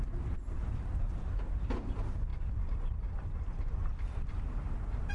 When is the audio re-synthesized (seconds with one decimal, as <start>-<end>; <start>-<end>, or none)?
2.3-5.1